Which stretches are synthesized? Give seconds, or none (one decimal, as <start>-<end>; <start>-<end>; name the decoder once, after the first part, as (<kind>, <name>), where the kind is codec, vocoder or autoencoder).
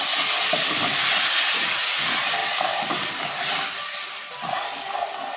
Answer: none